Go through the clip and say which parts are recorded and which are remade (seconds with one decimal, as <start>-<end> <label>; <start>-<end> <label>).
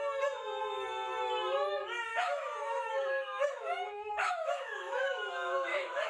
0.0-2.1 recorded; 2.1-6.1 remade